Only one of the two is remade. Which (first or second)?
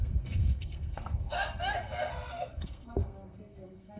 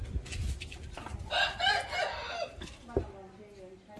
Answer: first